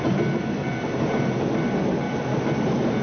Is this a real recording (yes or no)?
yes